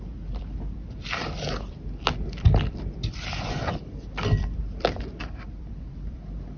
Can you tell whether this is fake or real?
fake